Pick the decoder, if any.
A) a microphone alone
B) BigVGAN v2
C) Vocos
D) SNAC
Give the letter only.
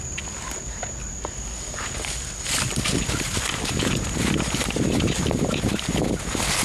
A